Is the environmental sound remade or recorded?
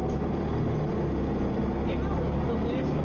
recorded